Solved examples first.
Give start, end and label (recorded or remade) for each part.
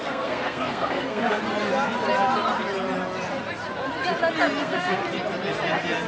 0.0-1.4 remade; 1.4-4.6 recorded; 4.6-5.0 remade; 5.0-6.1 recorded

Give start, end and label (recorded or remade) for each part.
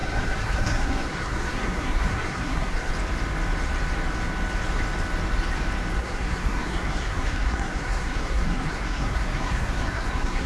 0.0-2.9 remade; 2.9-6.0 recorded; 6.0-10.5 remade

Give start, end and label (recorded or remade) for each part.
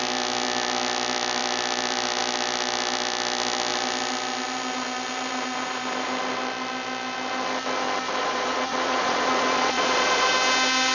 0.0-8.2 recorded; 8.2-10.3 remade; 10.3-10.9 recorded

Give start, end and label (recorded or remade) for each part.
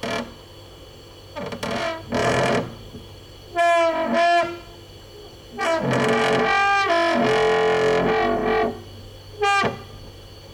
0.0-2.2 recorded; 2.2-3.2 remade; 3.2-10.5 recorded